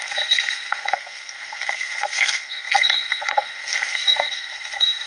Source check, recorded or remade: remade